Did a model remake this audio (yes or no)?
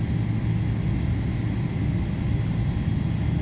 no